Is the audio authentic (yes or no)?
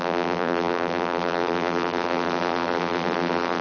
no